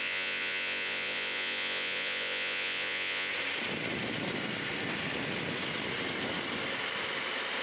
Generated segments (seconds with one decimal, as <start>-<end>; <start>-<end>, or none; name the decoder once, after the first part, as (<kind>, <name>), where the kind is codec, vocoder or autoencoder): 0.0-3.3 (vocoder, Vocos)